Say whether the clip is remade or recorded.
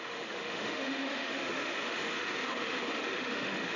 remade